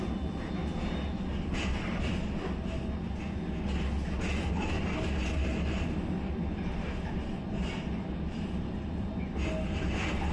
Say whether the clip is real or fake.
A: real